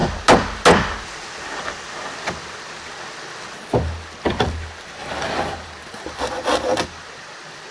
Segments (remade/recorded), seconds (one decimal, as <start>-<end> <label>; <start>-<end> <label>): 0.0-5.0 recorded; 5.0-6.3 remade; 6.3-7.7 recorded